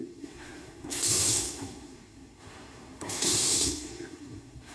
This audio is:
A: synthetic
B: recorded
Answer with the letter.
A